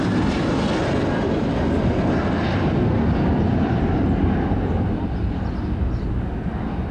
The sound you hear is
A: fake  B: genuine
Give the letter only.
B